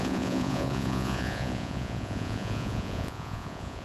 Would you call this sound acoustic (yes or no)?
no